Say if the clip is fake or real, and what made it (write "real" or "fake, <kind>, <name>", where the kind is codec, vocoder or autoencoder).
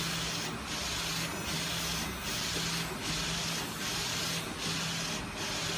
real